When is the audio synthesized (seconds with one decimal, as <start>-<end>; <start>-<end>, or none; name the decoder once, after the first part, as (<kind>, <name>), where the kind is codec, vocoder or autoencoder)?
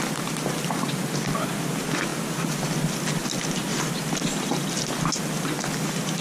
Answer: none